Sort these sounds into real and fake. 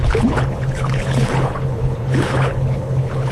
fake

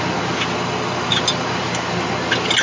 real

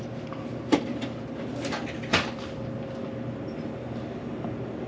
real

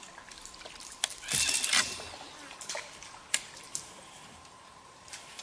real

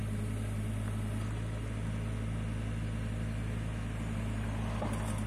real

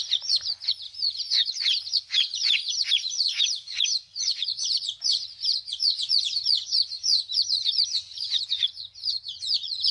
fake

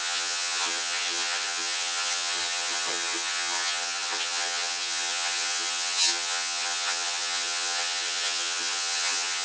fake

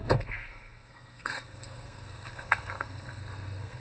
fake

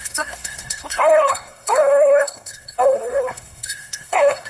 fake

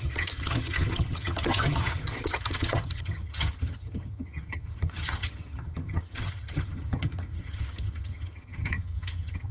fake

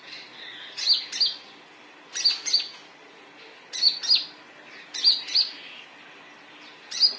real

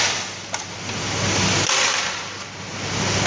real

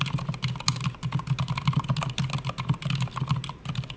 real